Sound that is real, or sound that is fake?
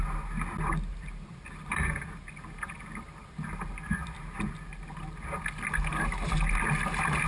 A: real